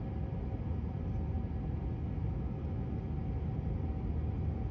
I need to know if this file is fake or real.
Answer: real